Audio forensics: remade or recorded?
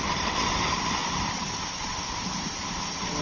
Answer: remade